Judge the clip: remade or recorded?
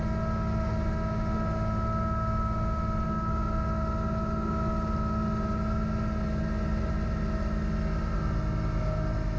recorded